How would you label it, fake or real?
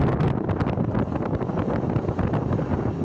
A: real